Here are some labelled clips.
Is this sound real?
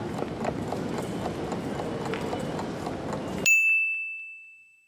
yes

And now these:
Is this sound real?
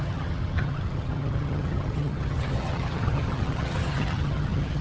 no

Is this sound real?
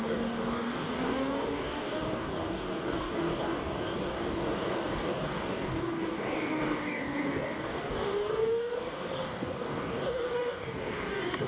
no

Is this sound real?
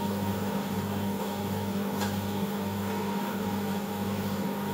no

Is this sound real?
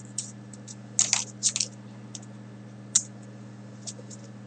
yes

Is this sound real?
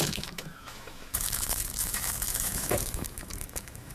no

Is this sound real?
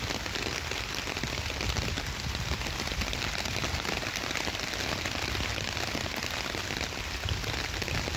yes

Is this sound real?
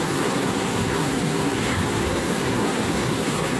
no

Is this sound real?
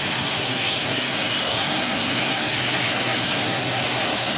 no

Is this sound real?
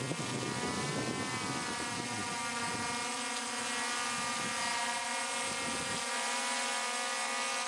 yes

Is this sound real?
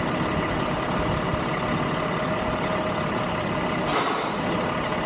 yes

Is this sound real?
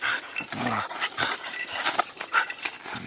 yes